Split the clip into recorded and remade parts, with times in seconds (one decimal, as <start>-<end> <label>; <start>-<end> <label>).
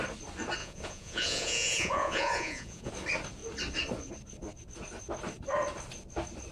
0.0-0.6 recorded; 0.6-2.9 remade; 2.9-6.5 recorded